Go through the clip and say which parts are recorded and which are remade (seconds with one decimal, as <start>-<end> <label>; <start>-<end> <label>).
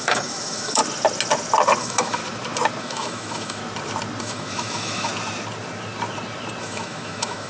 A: 0.0-0.8 remade; 0.8-1.8 recorded; 1.8-2.2 remade; 2.2-2.8 recorded; 2.8-3.6 remade; 3.6-4.2 recorded; 4.2-5.1 remade; 5.1-6.6 recorded; 6.6-7.5 remade